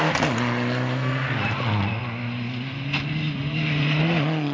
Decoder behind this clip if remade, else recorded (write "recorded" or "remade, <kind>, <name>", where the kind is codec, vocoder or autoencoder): recorded